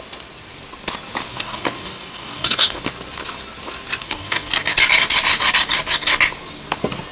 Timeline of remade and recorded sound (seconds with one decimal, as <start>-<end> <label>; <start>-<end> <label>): 0.0-1.3 recorded; 1.3-2.8 remade; 2.8-4.0 recorded; 4.0-4.5 remade; 4.5-7.1 recorded

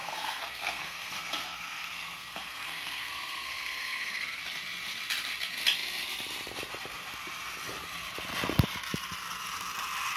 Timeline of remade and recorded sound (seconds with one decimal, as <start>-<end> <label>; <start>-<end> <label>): 0.0-4.4 remade; 4.4-10.2 recorded

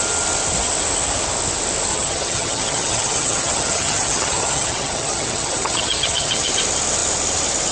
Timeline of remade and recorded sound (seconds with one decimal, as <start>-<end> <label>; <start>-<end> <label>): 0.0-1.9 recorded; 1.9-6.5 remade; 6.5-7.7 recorded

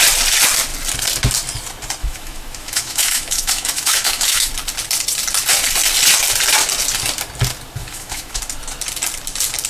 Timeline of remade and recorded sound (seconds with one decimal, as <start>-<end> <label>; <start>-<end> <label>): 0.0-2.0 recorded; 2.0-4.5 remade; 4.5-7.8 recorded; 7.8-8.4 remade; 8.4-9.7 recorded